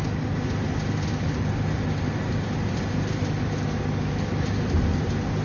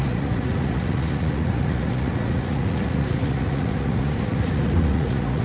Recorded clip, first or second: first